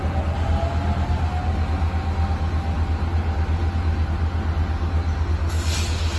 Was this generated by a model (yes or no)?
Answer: no